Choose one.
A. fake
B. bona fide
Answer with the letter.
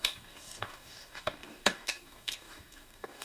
A